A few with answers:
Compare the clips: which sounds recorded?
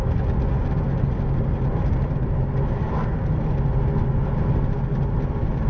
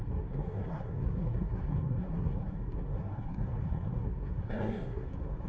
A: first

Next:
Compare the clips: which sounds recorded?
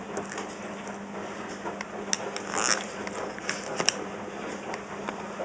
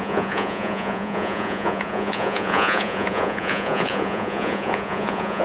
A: first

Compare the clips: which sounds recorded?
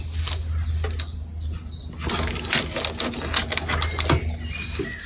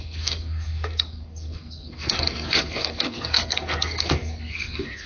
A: first